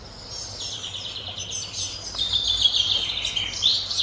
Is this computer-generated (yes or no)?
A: no